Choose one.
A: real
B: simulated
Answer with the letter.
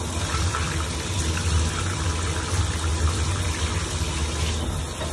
A